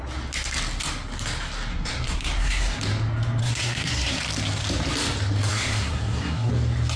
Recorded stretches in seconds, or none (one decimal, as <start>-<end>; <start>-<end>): 0.0-1.7; 2.8-3.4; 4.2-5.5; 6.5-7.0